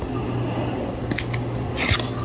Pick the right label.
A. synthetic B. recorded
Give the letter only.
B